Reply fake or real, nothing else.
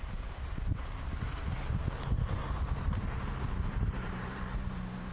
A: fake